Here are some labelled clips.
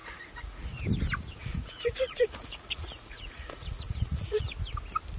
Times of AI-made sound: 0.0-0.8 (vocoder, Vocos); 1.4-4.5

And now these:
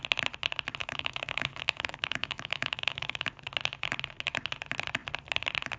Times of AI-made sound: 0.8-3.3 (autoencoder, DAC-VAE)

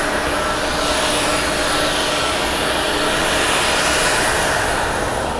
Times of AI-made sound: none

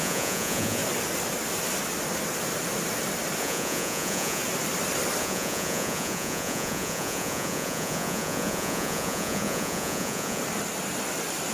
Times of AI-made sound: 0.0-0.8 (vocoder, Vocos); 3.4-4.4; 5.2-10.4

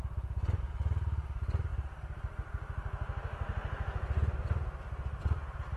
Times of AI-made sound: none

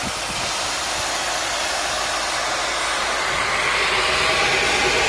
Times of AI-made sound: none